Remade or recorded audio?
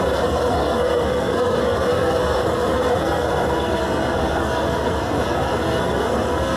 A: remade